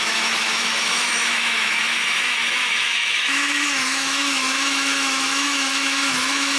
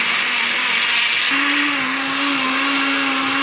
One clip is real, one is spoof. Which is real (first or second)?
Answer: second